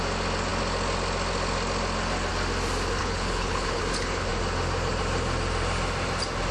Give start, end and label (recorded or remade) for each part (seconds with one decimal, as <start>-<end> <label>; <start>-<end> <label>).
0.0-3.0 recorded; 3.0-3.8 remade; 3.8-6.5 recorded